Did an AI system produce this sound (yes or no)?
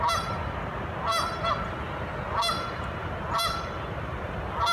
no